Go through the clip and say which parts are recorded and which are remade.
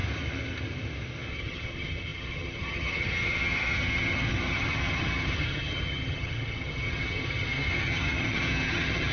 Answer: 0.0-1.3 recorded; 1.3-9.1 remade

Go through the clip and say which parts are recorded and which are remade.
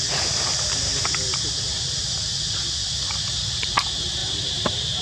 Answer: 0.0-4.2 recorded; 4.2-5.0 remade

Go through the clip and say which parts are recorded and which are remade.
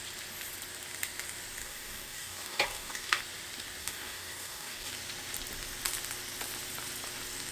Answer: 0.0-1.6 recorded; 1.6-3.2 remade; 3.2-3.8 recorded; 3.8-4.9 remade; 4.9-7.5 recorded